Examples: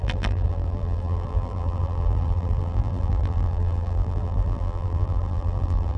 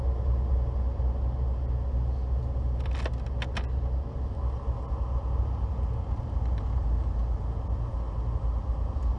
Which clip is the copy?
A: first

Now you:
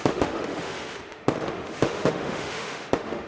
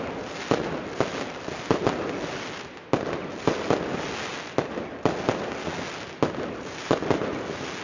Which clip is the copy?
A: first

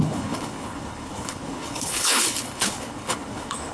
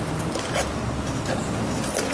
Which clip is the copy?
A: first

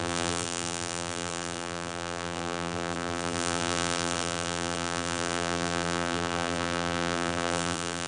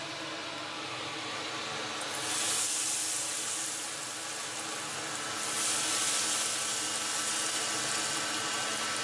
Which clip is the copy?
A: first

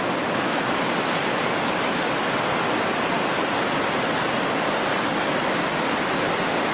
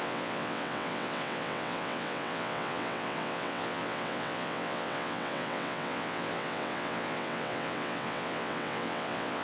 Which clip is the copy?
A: second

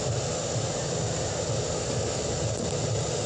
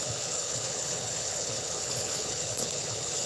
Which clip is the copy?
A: second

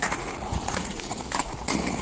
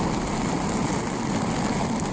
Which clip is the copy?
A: first